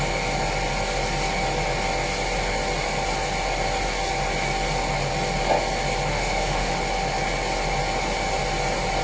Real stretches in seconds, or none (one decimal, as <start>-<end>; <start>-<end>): 0.0-6.1; 6.7-9.0